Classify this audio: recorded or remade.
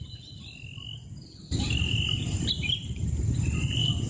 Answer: recorded